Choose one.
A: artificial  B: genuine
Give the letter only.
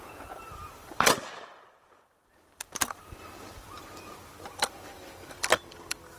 A